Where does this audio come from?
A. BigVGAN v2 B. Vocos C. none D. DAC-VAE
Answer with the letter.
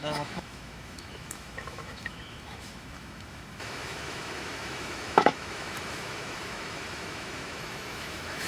D